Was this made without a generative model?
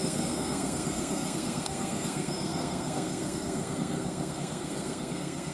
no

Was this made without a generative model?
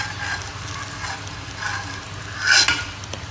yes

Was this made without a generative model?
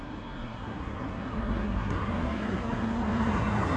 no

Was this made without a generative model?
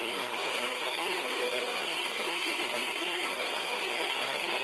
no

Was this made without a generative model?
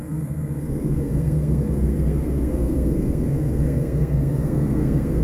no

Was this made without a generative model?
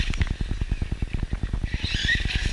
yes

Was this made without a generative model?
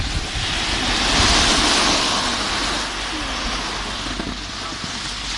yes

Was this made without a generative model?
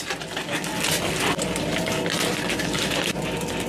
yes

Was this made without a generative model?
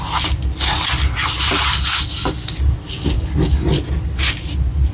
yes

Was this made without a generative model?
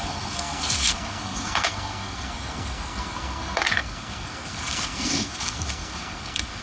no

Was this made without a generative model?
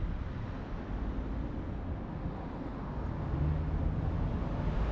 yes